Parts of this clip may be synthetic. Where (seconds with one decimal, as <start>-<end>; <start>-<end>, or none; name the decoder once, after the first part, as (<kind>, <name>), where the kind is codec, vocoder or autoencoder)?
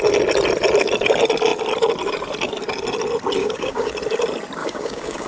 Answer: 3.4-3.9 (codec, DAC); 4.6-5.3